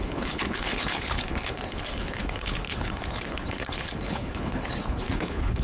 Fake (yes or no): yes